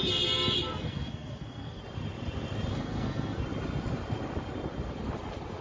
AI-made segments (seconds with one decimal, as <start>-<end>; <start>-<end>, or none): 0.7-1.8; 2.7-3.4